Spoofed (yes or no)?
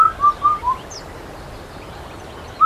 no